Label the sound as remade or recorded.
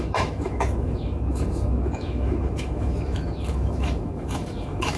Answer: remade